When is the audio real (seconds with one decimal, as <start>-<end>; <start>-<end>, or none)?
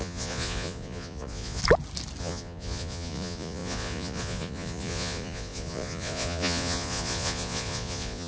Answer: 1.6-2.2